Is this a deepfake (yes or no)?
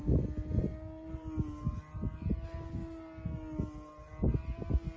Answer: no